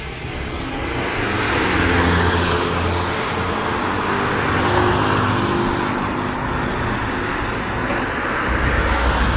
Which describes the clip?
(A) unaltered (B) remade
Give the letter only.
A